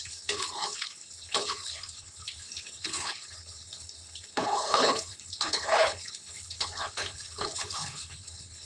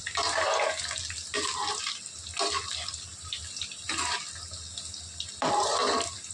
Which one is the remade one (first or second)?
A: first